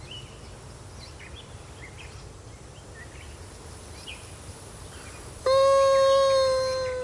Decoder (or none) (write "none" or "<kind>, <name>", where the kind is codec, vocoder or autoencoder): none